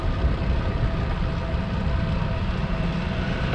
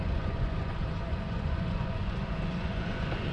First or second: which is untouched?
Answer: first